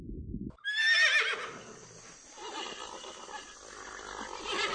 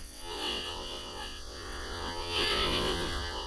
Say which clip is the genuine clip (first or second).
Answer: first